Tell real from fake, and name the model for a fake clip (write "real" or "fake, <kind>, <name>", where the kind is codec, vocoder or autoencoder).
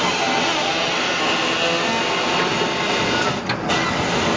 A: real